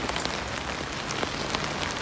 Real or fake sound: real